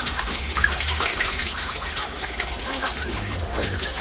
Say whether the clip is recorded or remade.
remade